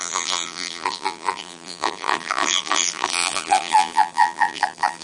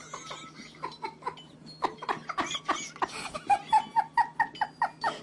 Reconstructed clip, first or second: first